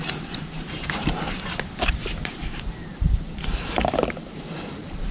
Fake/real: fake